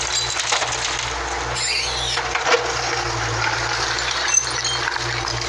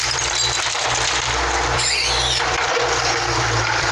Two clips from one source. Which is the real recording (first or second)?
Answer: first